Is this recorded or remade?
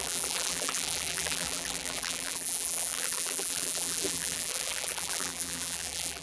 remade